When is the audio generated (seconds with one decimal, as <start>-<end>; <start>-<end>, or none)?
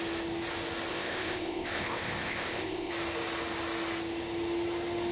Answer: 0.9-2.9